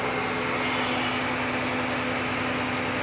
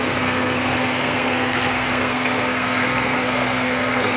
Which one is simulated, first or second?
second